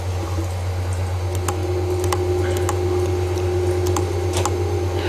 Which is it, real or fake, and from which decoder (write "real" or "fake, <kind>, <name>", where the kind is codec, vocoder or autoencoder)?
real